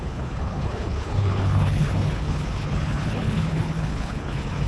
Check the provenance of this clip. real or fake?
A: fake